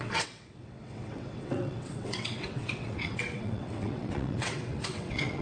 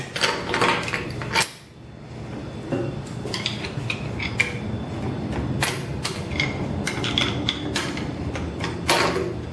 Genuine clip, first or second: second